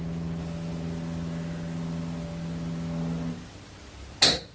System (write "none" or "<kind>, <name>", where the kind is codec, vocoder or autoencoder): none